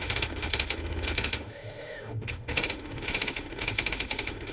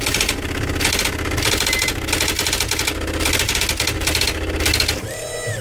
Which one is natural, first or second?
second